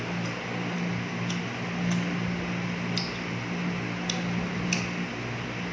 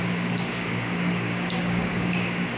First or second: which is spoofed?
second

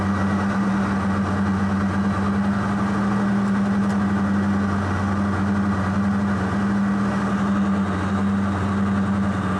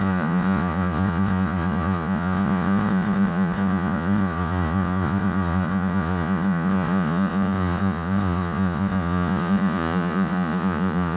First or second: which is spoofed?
second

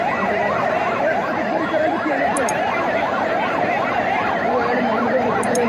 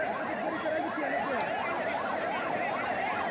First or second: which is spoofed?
first